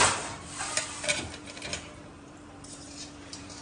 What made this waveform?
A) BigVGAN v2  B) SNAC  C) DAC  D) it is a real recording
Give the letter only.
A